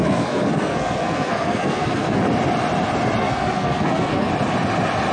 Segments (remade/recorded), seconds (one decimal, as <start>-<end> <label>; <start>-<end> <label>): 0.0-2.2 remade; 2.2-3.2 recorded; 3.2-4.3 remade; 4.3-5.1 recorded